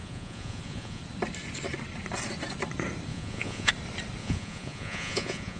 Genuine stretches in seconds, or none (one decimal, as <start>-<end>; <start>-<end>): 1.0-3.1; 3.7-4.2